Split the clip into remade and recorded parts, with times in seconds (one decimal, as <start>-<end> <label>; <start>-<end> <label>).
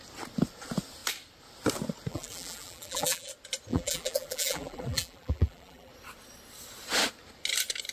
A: 0.0-2.1 recorded; 2.1-3.3 remade; 3.3-3.7 recorded; 3.7-5.9 remade; 5.9-7.9 recorded